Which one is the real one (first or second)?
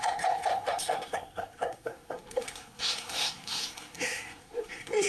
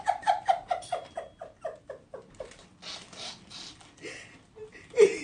second